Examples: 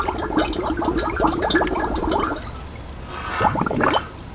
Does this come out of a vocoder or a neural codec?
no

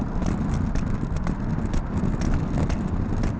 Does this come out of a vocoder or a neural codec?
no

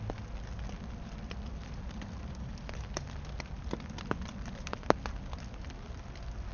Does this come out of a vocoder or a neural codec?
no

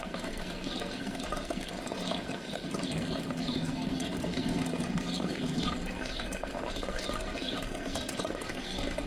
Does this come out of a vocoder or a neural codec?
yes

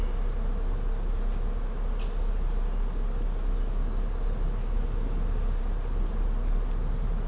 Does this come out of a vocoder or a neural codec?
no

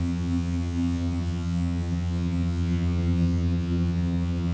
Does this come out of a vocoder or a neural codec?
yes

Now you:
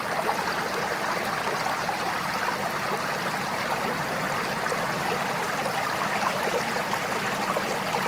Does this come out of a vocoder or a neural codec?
no